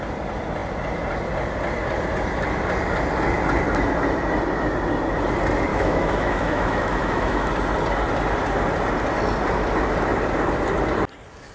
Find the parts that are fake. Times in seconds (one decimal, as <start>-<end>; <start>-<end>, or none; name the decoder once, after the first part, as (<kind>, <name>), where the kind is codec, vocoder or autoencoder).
5.7-7.5 (autoencoder, DAC-VAE)